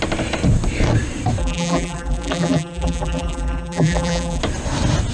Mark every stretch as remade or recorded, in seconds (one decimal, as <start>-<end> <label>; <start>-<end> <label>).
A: 0.0-1.4 recorded; 1.4-4.4 remade; 4.4-5.1 recorded